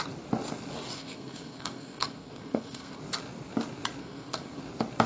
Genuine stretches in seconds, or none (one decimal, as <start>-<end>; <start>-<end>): 0.0-1.0; 3.0-4.0; 4.6-5.1